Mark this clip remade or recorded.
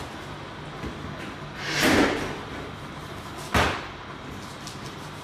recorded